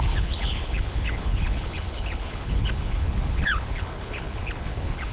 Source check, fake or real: fake